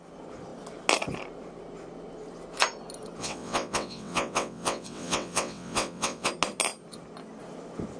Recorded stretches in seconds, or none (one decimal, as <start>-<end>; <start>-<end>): 0.0-3.2; 6.3-8.0